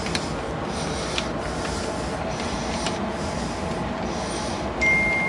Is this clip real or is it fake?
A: real